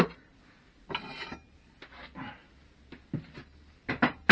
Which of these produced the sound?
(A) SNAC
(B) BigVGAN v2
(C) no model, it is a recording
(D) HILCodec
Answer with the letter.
C